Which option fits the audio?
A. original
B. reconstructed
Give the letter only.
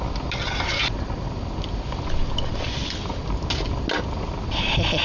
A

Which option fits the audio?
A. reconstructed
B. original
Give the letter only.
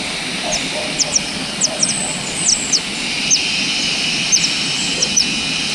B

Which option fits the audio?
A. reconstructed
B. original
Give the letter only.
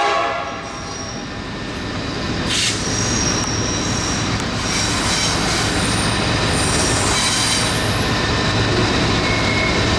B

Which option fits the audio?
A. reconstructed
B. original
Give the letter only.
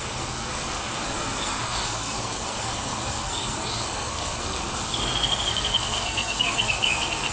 A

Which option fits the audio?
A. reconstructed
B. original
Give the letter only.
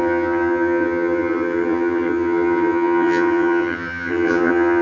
A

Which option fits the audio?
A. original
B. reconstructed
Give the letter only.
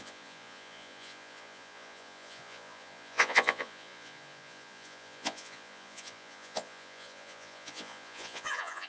B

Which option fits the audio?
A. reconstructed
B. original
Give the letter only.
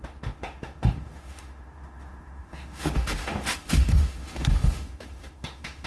A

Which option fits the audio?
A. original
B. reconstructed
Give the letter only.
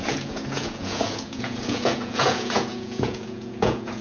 B